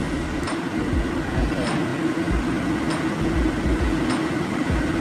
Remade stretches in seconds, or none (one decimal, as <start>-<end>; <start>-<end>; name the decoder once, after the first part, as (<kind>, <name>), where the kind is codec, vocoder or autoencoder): 0.5-1.0 (vocoder, BigVGAN v2)